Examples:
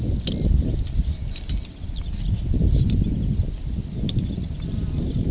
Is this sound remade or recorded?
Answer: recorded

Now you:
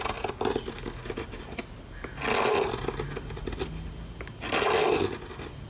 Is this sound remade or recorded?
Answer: recorded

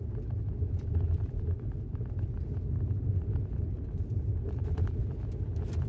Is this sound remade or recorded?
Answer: recorded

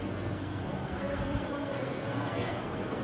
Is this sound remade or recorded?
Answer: remade